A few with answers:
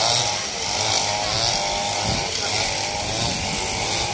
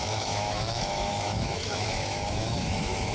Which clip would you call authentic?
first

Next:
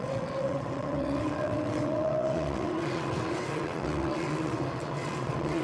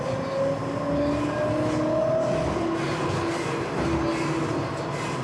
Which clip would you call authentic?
second